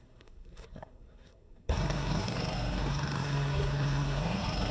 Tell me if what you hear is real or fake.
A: fake